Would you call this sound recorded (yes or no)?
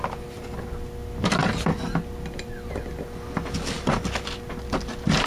yes